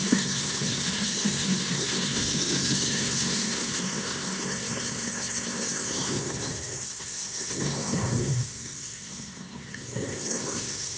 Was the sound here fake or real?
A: fake